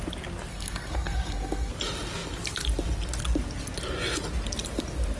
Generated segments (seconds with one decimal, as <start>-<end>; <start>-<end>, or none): 0.5-1.7